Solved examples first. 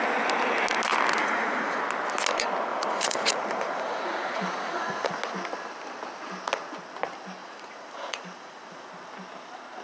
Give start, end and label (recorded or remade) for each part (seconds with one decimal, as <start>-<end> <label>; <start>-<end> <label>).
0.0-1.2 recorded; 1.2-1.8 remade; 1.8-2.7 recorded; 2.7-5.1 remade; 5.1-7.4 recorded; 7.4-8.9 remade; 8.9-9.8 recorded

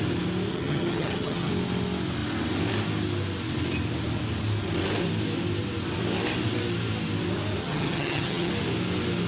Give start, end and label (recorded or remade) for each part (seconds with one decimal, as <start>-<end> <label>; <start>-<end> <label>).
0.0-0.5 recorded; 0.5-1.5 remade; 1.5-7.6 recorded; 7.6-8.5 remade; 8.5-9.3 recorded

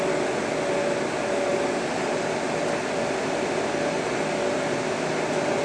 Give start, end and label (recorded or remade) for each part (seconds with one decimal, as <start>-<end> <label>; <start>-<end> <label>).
0.0-5.6 recorded

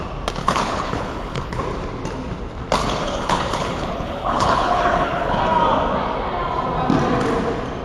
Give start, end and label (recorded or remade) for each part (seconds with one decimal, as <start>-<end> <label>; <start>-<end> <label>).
0.0-0.4 recorded; 0.4-1.6 remade; 1.6-2.8 recorded; 2.8-5.4 remade; 5.4-7.8 recorded

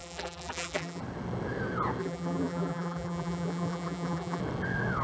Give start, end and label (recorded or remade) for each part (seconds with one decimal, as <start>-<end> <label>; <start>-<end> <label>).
0.0-1.0 remade; 1.0-2.0 recorded; 2.0-4.4 remade; 4.4-5.0 recorded

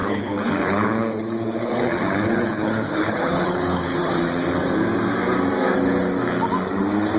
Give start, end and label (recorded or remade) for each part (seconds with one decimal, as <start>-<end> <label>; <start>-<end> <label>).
0.0-4.1 remade; 4.1-7.2 recorded